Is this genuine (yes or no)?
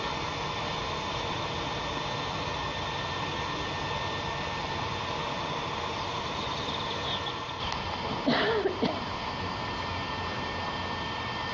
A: yes